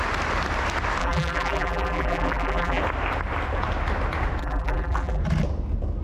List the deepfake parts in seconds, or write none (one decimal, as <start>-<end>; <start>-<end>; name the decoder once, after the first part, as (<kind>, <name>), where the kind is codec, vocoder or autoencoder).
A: 1.0-2.8 (vocoder, BigVGAN v2); 4.4-5.2